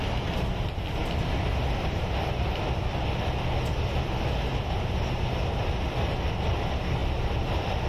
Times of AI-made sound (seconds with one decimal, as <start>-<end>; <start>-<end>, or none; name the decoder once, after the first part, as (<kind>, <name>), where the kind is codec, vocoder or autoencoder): none